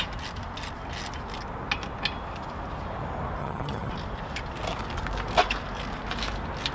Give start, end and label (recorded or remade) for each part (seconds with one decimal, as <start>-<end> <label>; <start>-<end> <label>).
0.0-3.4 recorded; 3.4-3.9 remade; 3.9-6.7 recorded